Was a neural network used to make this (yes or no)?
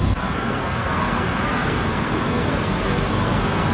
yes